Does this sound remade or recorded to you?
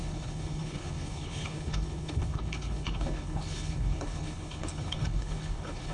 remade